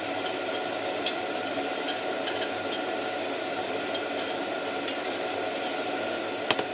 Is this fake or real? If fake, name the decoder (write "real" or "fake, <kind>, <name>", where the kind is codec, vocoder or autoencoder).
real